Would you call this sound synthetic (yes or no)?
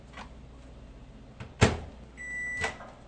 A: no